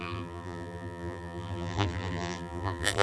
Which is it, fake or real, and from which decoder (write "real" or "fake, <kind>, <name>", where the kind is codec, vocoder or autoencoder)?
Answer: fake, vocoder, BigVGAN v2